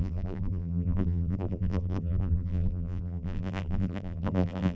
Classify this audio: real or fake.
fake